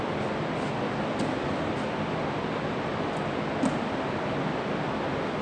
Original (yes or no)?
yes